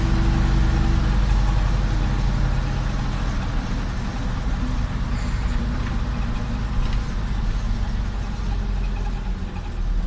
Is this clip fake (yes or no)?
no